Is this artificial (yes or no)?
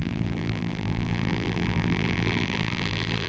yes